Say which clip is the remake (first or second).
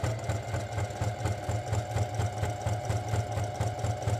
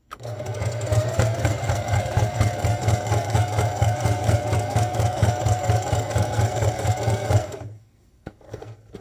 second